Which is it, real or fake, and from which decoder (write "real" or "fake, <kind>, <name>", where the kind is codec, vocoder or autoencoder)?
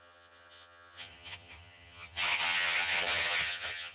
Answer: fake, vocoder, HiFi-GAN